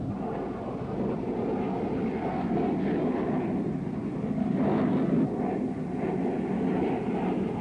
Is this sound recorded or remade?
recorded